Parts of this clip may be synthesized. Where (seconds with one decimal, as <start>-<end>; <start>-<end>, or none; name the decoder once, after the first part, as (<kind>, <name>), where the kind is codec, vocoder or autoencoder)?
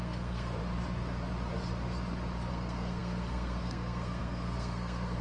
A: 0.0-0.6 (codec, SNAC); 2.5-5.2